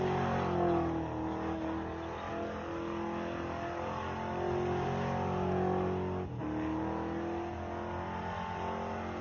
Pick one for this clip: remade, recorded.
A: recorded